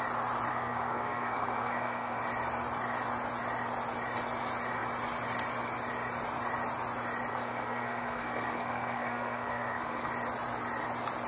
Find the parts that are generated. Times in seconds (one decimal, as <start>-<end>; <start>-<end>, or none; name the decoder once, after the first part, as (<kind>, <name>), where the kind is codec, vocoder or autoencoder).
0.5-2.2 (codec, SNAC); 7.3-10.1